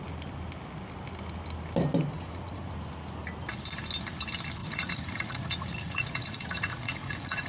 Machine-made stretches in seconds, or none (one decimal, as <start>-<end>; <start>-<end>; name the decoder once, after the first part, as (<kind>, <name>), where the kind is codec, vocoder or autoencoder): 2.1-2.7 (vocoder, Vocos); 4.6-7.5